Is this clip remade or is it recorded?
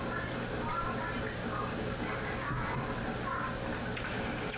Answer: recorded